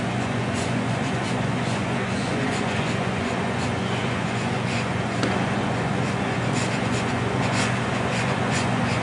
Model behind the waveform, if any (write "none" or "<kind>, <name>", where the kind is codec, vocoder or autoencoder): vocoder, Vocos